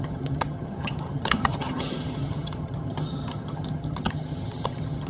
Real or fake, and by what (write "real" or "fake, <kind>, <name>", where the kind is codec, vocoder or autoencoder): fake, vocoder, HiFi-GAN